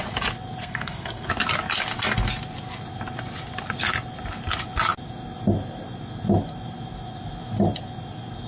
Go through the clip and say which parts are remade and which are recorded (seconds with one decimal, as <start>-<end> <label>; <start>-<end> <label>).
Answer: 0.0-0.6 recorded; 0.6-1.3 remade; 1.3-8.5 recorded